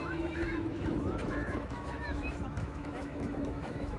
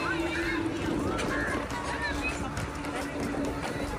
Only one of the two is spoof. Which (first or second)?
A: first